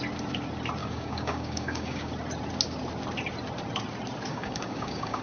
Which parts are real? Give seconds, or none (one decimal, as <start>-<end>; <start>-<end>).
0.0-0.8; 2.1-4.3